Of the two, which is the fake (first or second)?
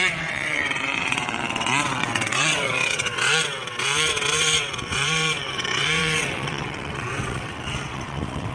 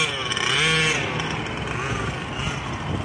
first